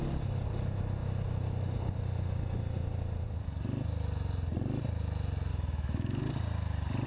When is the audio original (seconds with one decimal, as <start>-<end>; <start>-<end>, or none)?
0.0-5.5; 6.2-7.1